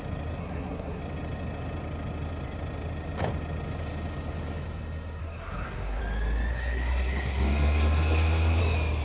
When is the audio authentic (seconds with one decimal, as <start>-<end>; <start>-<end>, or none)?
0.0-0.4; 1.0-5.2; 6.0-6.5; 8.6-9.0